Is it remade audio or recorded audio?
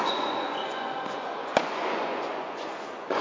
remade